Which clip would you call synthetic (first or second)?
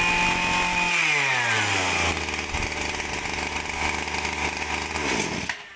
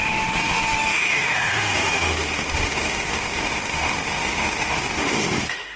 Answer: second